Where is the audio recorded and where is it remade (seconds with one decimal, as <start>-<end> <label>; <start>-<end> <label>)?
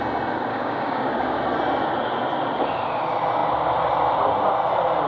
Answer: 0.0-0.5 recorded; 0.5-1.4 remade; 1.4-5.1 recorded